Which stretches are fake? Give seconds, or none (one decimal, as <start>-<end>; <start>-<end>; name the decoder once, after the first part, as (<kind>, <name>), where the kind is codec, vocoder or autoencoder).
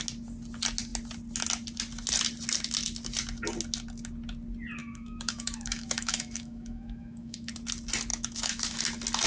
4.8-7.5 (autoencoder, DAC-VAE); 8.1-8.8